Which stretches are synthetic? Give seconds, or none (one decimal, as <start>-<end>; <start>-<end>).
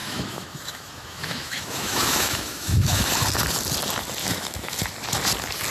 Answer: 0.0-3.1; 4.2-4.8